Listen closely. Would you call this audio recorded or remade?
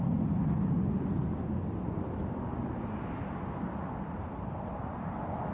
recorded